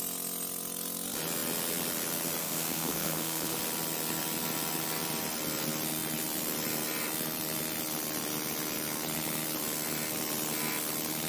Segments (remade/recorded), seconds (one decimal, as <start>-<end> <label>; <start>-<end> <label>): 0.0-2.4 recorded; 2.4-3.6 remade; 3.6-11.3 recorded